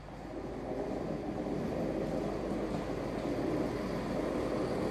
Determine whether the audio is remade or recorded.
recorded